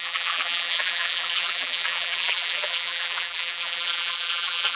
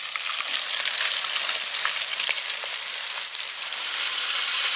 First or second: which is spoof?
first